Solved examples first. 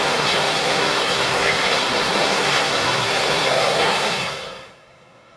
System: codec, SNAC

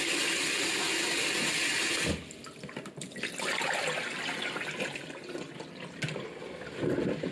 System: none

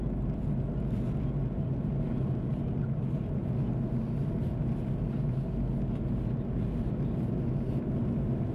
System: none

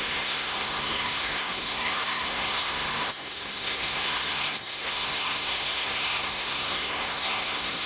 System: codec, SNAC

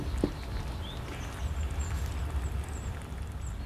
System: none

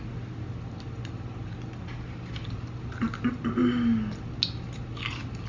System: none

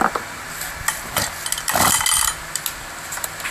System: none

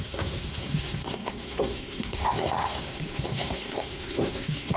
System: codec, SNAC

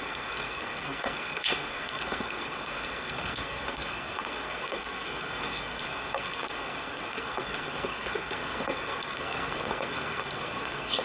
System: codec, SNAC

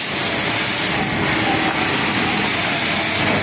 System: none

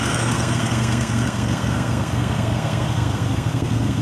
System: codec, SNAC